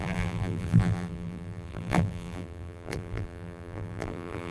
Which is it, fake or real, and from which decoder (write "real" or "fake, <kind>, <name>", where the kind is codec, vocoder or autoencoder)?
fake, vocoder, BigVGAN v2